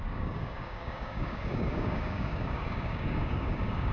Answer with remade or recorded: remade